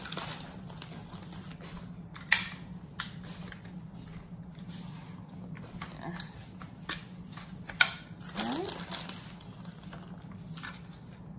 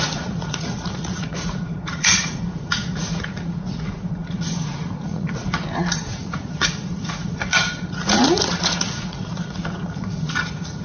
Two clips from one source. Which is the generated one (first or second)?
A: second